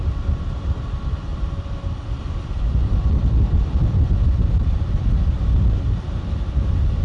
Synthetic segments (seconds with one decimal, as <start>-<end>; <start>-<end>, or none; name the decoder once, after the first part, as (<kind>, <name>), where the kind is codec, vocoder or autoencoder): 1.3-5.5 (vocoder, BigVGAN v2)